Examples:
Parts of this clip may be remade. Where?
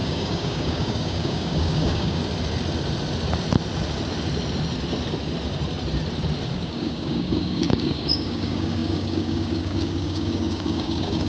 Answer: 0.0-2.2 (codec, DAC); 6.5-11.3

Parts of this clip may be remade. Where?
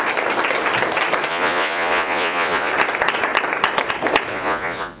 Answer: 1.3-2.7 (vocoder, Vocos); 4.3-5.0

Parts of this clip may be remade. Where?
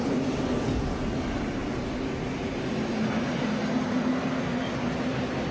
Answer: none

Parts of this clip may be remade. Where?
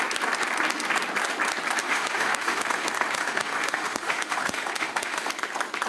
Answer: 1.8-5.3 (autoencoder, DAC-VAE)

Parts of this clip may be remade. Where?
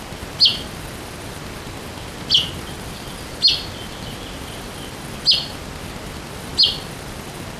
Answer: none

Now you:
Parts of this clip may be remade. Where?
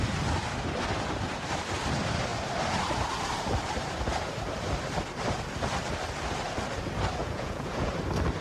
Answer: 7.2-7.9 (vocoder, Vocos)